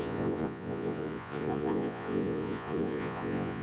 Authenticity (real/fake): fake